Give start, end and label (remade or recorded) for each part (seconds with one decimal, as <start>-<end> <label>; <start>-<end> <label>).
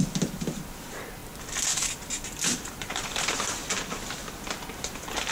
0.0-1.2 remade; 1.2-2.7 recorded; 2.7-3.6 remade; 3.6-4.3 recorded; 4.3-5.3 remade